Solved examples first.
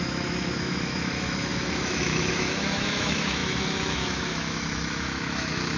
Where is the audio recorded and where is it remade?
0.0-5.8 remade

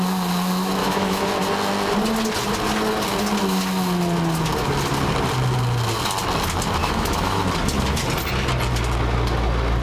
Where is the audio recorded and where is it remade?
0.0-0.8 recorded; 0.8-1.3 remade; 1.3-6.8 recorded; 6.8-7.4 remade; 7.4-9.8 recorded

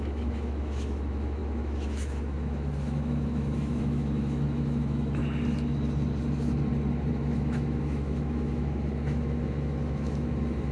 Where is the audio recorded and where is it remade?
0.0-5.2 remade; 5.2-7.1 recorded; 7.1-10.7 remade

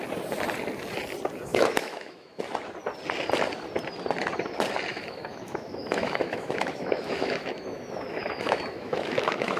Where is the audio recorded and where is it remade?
0.0-1.5 recorded; 1.5-2.4 remade; 2.4-4.9 recorded; 4.9-9.6 remade

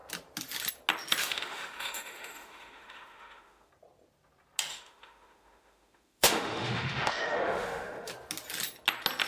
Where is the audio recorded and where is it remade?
0.0-1.2 recorded; 1.2-3.7 remade; 3.7-4.7 recorded; 4.7-8.1 remade; 8.1-9.3 recorded

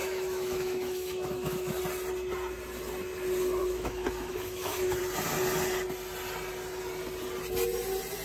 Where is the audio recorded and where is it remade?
0.0-1.8 remade; 1.8-3.6 recorded; 3.6-5.0 remade; 5.0-8.2 recorded

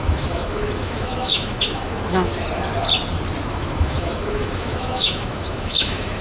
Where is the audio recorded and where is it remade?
0.0-2.3 remade; 2.3-3.5 recorded; 3.5-6.2 remade